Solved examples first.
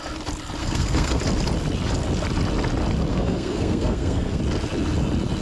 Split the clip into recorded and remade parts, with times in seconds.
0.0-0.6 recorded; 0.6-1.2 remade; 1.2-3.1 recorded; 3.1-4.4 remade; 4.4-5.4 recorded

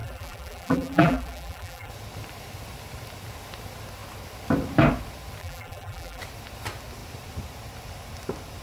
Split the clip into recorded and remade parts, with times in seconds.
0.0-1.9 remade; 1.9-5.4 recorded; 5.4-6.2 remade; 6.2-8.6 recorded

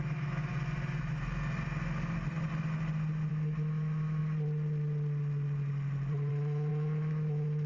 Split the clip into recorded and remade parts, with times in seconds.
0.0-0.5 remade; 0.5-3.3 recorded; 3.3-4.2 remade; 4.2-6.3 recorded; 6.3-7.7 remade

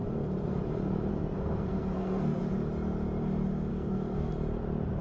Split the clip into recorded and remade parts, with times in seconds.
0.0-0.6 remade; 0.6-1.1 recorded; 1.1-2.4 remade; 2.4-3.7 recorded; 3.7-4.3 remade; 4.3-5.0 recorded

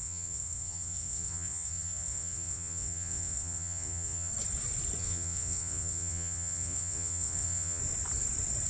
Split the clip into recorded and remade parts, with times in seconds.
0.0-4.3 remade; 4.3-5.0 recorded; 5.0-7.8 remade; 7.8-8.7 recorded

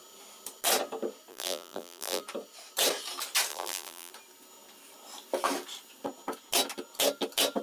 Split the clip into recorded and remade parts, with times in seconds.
0.0-1.3 recorded; 1.3-2.2 remade; 2.2-3.5 recorded; 3.5-4.1 remade; 4.1-7.6 recorded